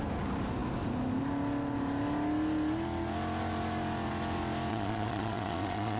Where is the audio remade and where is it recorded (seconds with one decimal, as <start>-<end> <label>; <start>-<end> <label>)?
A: 0.0-4.7 recorded; 4.7-6.0 remade